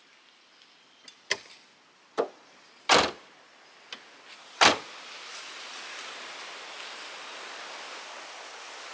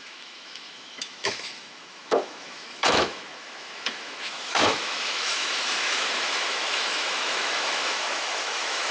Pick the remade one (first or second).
second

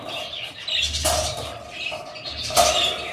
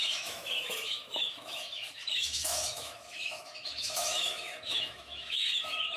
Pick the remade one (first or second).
second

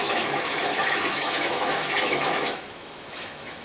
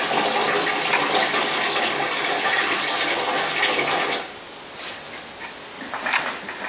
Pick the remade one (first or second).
first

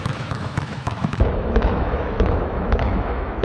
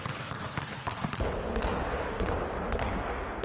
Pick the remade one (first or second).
first